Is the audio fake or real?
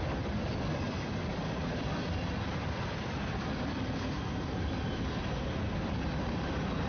real